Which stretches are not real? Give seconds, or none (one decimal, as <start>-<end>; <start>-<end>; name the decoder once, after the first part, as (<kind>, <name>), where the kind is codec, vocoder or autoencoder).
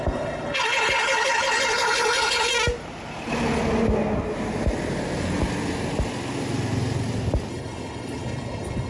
0.0-2.5 (codec, HILCodec); 7.5-8.9